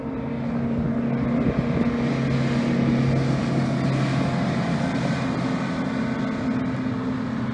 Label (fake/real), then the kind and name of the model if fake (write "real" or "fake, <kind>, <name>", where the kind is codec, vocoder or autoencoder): real